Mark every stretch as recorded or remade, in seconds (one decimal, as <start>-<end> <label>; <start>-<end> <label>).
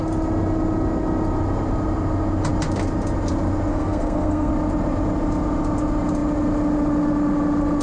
0.0-3.7 recorded; 3.7-4.5 remade; 4.5-7.8 recorded